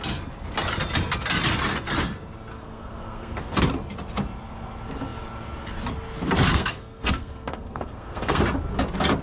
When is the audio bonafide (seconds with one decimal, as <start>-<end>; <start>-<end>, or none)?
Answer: 0.0-2.5; 3.6-6.5; 8.4-9.2